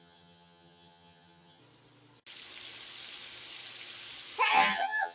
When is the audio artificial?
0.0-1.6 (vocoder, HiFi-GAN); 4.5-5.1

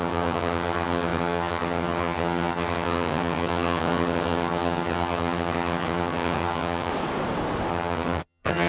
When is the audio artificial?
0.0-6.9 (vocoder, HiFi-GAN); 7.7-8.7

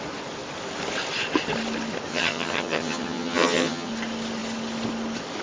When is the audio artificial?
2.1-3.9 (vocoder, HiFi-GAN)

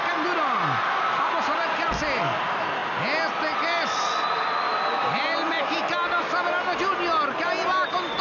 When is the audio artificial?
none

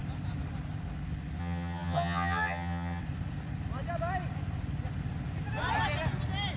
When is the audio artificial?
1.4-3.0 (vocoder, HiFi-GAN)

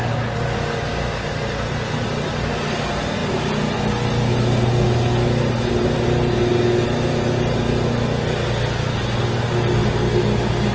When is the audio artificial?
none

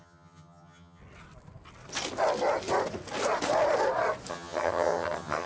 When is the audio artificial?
0.0-1.0 (vocoder, HiFi-GAN); 4.3-5.5